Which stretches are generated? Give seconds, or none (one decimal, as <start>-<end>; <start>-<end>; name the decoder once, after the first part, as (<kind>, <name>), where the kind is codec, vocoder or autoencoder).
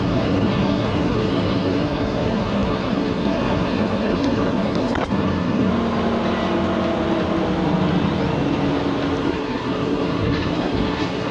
0.0-5.7 (codec, SNAC); 9.2-11.3